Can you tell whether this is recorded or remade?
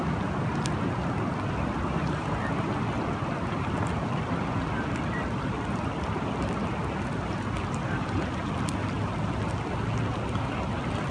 recorded